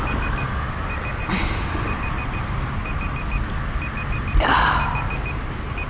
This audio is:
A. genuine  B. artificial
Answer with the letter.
A